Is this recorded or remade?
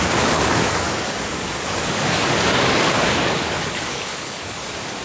remade